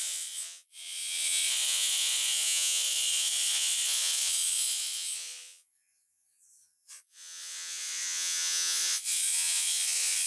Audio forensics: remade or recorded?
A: remade